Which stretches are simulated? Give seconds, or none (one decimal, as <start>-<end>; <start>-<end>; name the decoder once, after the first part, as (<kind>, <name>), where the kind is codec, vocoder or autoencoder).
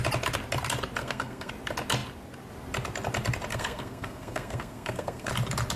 1.0-1.5 (codec, SNAC); 3.5-5.3